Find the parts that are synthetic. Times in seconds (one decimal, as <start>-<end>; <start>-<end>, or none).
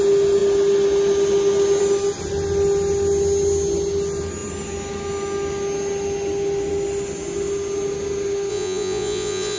8.5-9.6